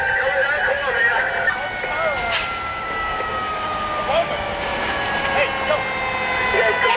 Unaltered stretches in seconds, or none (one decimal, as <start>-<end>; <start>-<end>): 0.0-2.7; 5.0-7.0